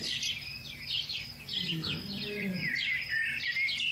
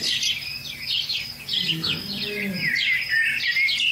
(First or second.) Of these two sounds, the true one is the second